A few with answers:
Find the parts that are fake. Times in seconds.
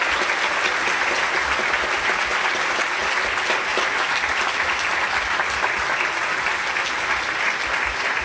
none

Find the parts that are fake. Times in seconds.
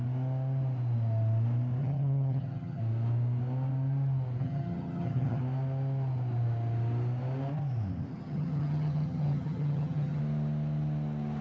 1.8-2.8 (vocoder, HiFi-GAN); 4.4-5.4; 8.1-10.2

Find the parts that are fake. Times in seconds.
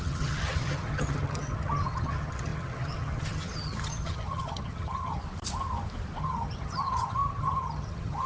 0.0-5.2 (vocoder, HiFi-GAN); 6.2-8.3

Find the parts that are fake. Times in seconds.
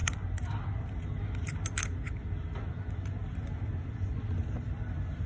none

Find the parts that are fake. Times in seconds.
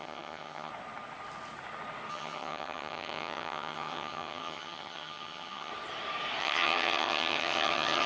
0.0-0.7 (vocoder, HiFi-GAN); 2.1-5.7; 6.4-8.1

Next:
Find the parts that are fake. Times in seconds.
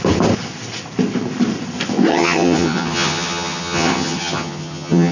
2.1-5.1 (vocoder, HiFi-GAN)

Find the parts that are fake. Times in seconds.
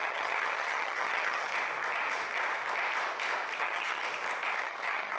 0.0-1.5 (vocoder, HiFi-GAN); 3.6-4.0; 4.6-5.2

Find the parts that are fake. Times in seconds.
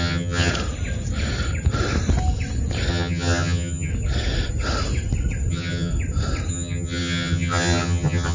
0.0-0.5 (vocoder, HiFi-GAN); 2.9-3.9; 5.5-5.9; 6.5-8.3